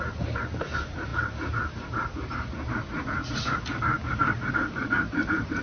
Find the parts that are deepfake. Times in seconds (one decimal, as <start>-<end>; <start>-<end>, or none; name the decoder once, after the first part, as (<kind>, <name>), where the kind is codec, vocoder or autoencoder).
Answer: 0.0-5.6 (vocoder, BigVGAN v2)